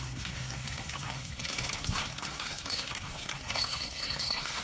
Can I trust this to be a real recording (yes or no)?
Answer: no